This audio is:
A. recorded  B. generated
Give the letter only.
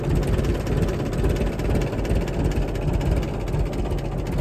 A